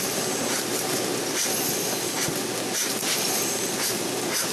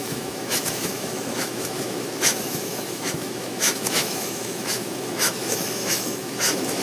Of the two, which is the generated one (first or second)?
second